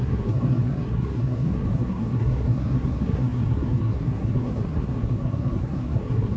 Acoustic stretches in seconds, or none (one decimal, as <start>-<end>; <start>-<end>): none